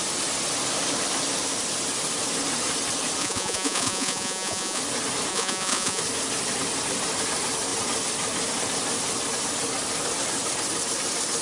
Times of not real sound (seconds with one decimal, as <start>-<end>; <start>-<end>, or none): 3.2-4.8; 5.3-6.0